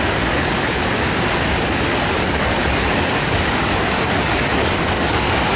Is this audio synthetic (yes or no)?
yes